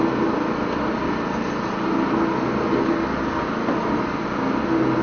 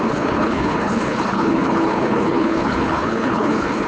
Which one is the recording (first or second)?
first